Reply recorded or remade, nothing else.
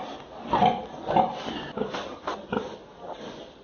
recorded